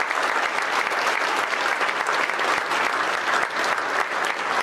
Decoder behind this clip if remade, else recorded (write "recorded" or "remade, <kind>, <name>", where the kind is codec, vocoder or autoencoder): recorded